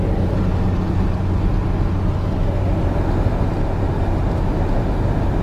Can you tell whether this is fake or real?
real